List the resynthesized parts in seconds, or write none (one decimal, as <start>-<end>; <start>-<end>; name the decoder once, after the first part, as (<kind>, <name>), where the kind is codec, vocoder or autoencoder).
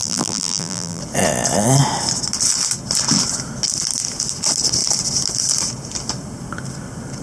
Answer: 0.0-1.0 (vocoder, BigVGAN v2)